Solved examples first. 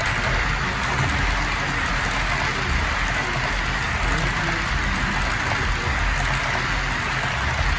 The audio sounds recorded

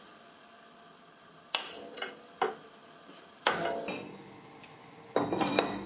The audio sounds recorded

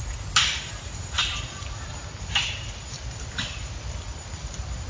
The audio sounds recorded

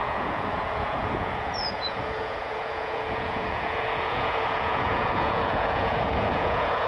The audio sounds remade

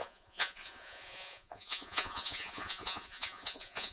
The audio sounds remade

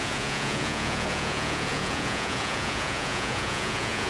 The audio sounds remade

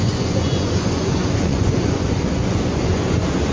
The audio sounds remade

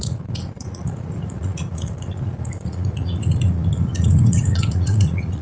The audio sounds remade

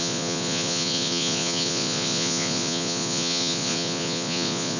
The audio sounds remade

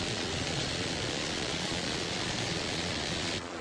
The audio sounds remade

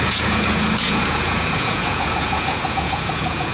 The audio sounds remade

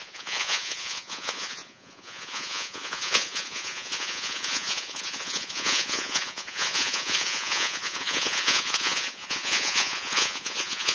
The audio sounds remade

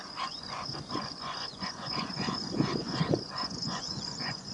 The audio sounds remade